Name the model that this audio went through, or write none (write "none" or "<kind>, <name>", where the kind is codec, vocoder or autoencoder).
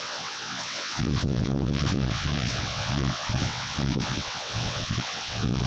vocoder, WaveNeXt